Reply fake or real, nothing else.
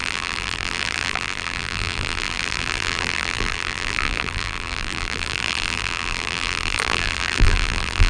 fake